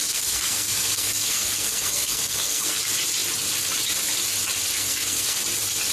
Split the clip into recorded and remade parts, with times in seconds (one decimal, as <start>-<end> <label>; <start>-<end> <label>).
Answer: 0.0-2.8 remade; 2.8-4.8 recorded; 4.8-5.4 remade; 5.4-5.9 recorded